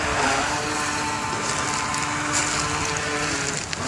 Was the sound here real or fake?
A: real